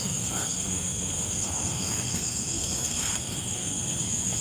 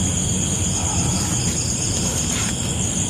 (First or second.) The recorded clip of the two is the second